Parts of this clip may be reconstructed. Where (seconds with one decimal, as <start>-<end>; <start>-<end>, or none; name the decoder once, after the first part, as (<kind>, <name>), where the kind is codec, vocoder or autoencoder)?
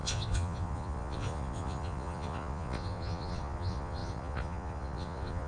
0.0-5.5 (vocoder, Vocos)